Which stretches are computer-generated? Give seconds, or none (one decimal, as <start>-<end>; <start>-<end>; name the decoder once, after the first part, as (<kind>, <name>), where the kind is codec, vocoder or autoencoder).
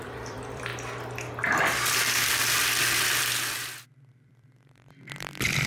0.0-0.7 (vocoder, BigVGAN v2); 4.1-5.7